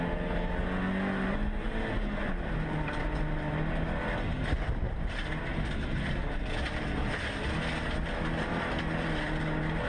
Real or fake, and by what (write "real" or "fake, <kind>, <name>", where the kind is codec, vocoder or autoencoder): real